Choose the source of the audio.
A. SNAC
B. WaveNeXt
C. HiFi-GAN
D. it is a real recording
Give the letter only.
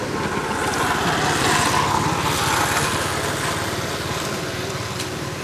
D